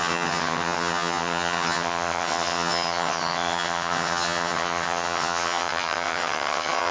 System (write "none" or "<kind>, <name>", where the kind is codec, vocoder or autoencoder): vocoder, HiFi-GAN